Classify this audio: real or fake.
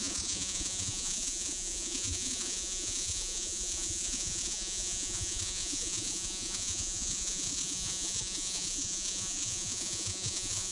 fake